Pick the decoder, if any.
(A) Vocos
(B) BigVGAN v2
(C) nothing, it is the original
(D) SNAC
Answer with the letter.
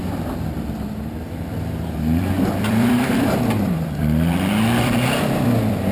B